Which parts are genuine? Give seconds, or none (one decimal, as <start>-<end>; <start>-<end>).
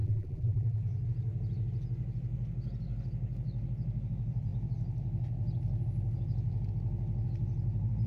0.8-8.1